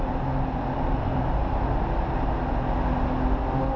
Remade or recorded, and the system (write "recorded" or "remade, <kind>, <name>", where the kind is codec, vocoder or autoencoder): recorded